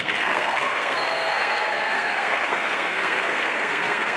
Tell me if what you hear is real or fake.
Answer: fake